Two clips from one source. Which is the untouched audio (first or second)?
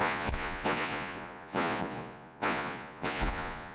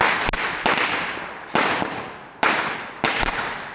second